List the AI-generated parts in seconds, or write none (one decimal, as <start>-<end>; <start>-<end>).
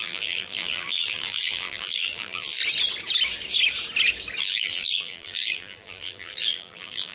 0.0-2.6; 4.4-7.1